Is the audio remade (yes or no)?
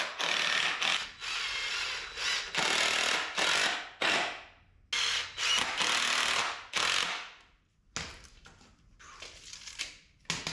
no